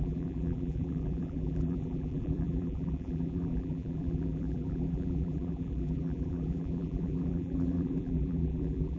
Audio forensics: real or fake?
fake